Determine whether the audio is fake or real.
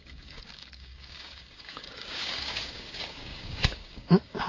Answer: fake